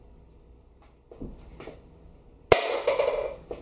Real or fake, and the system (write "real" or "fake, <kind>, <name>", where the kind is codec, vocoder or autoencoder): real